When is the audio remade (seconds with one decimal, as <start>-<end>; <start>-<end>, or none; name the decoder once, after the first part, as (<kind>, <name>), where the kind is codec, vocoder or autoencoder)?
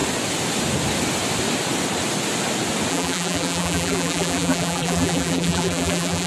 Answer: 2.9-6.3 (vocoder, BigVGAN v2)